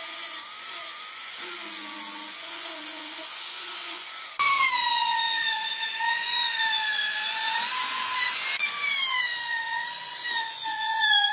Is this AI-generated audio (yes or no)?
yes